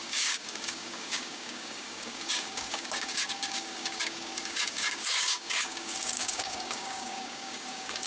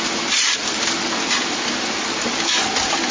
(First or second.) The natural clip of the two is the second